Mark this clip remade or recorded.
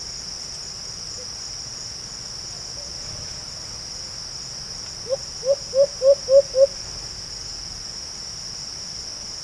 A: recorded